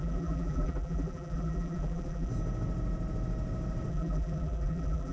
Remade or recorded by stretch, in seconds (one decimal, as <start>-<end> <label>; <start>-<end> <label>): 0.0-2.3 remade; 2.3-3.9 recorded; 3.9-5.1 remade